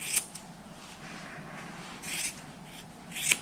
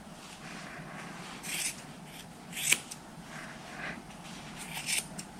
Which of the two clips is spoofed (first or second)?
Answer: second